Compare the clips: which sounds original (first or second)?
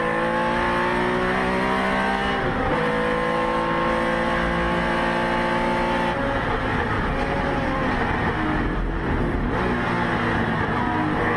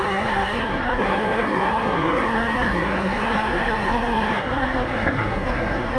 first